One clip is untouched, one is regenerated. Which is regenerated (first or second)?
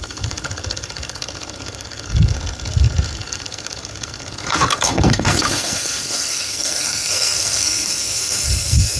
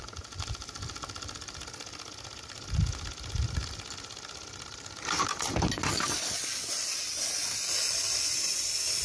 first